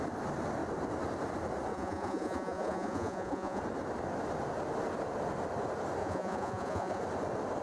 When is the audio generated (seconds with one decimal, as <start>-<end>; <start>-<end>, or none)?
1.7-3.6; 6.0-7.0